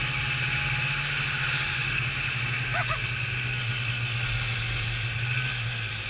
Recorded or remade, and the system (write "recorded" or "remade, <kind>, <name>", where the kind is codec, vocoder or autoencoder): recorded